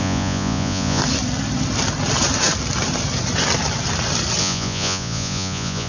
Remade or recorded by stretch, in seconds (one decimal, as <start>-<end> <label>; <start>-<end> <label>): 0.0-1.0 remade; 1.0-4.4 recorded; 4.4-5.9 remade